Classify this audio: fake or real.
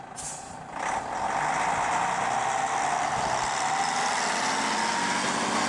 real